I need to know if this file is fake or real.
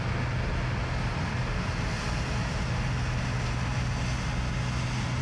real